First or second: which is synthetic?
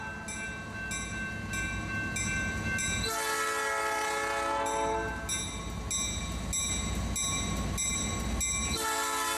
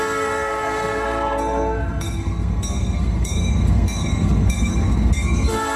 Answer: second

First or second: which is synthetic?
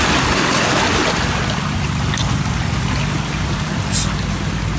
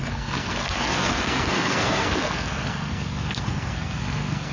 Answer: second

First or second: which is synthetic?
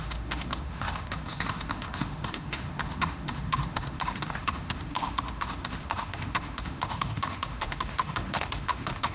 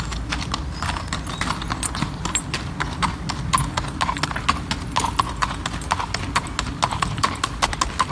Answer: first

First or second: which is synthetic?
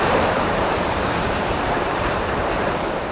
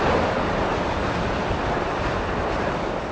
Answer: first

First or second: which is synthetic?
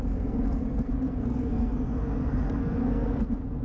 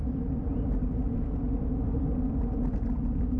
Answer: first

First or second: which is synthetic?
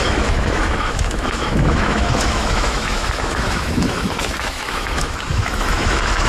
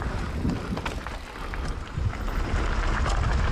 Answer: first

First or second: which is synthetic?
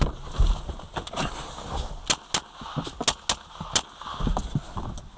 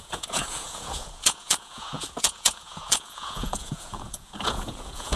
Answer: second